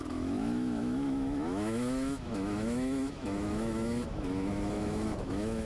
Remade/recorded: remade